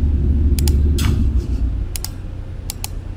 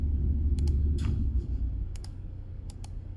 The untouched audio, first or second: first